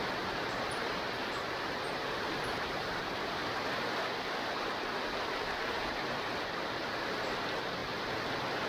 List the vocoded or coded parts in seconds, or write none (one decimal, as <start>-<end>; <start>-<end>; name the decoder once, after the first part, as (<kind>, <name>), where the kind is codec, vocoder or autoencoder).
0.0-3.4 (vocoder, BigVGAN v2); 4.6-7.8